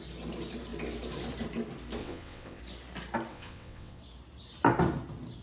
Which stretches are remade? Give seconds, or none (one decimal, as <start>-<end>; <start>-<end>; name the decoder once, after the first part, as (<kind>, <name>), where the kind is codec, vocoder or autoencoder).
2.0-2.6 (vocoder, WaveNeXt); 3.3-4.0

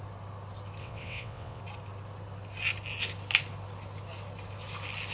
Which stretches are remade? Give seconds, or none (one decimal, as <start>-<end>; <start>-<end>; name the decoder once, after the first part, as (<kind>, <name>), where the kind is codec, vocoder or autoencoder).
0.8-1.6 (vocoder, WaveNeXt)

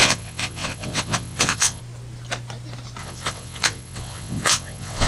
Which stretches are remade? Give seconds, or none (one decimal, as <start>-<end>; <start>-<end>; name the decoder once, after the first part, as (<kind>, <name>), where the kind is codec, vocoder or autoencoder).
0.0-1.8 (vocoder, WaveNeXt); 3.0-5.1

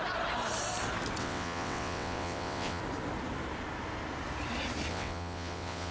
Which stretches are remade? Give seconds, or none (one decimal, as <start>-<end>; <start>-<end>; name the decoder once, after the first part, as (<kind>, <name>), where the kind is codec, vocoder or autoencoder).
1.2-2.8 (vocoder, WaveNeXt); 4.9-5.9

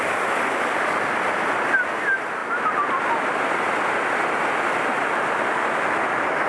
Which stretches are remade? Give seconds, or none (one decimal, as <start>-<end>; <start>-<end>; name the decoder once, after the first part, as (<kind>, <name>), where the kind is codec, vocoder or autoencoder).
none